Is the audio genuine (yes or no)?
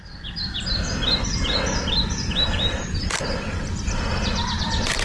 no